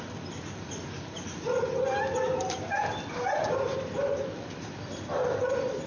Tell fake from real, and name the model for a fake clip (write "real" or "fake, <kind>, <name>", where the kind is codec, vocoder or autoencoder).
real